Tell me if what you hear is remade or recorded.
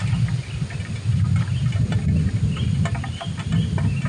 recorded